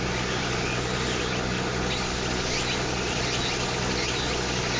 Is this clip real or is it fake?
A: real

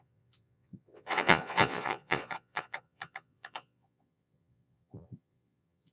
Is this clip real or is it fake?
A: fake